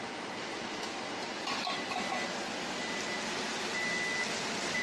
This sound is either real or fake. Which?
real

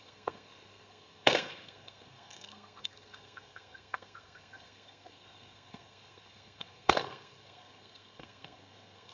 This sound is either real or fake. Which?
fake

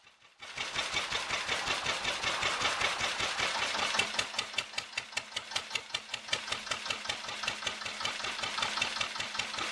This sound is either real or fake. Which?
real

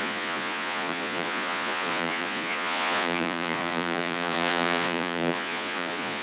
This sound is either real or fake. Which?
fake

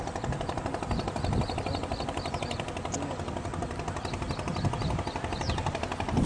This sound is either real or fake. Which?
real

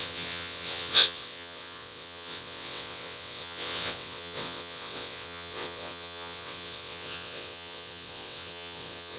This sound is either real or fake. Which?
fake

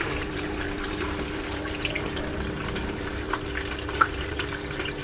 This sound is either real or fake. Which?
fake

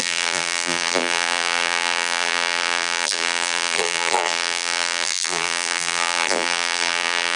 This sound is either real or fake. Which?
fake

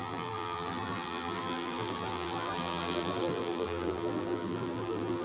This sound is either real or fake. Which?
fake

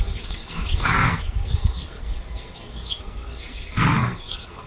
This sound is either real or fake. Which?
fake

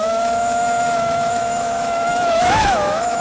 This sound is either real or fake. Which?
fake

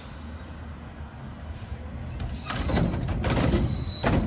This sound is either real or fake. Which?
real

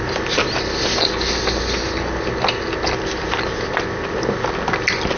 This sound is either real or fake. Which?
real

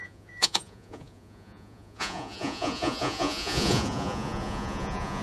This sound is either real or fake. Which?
fake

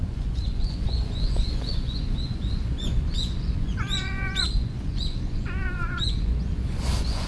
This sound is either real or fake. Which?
fake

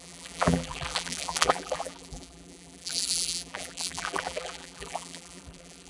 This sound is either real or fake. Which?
fake